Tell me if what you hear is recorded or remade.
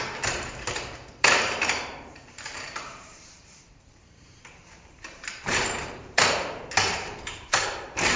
remade